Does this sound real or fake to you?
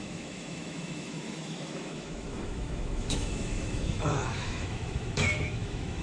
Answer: fake